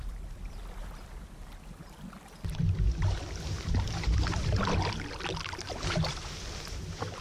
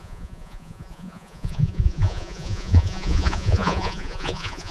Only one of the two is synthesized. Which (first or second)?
second